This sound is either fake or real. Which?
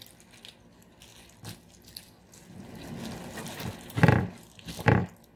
real